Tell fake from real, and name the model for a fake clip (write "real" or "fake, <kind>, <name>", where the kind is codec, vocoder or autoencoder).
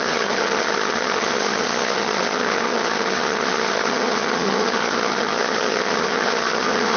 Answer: fake, vocoder, HiFi-GAN